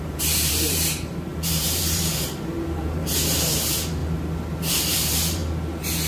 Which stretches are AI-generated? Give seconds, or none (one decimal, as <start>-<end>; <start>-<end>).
0.0-4.0; 4.7-5.4